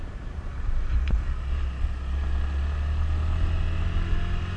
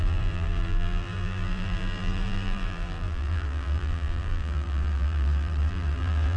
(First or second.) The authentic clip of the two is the first